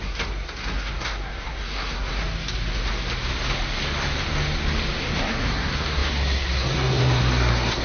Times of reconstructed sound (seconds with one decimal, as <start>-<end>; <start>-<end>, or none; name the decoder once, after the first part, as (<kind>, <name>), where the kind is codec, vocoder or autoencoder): 0.0-2.2 (codec, SNAC); 5.0-7.8